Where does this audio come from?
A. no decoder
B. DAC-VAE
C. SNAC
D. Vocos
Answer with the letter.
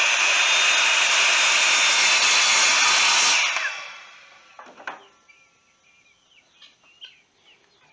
A